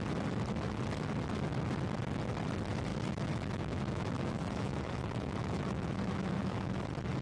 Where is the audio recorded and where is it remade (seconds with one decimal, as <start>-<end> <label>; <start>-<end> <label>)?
0.0-2.9 recorded; 2.9-6.8 remade; 6.8-7.2 recorded